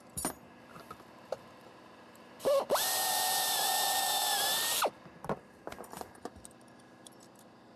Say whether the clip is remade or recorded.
remade